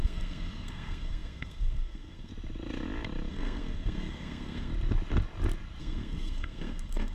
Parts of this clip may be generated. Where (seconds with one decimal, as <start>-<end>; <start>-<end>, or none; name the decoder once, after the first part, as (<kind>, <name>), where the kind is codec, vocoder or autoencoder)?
0.0-2.3 (codec, SNAC); 3.3-4.7; 5.8-7.1